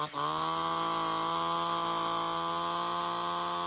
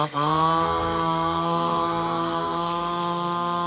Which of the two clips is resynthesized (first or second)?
second